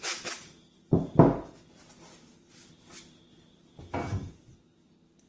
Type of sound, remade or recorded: recorded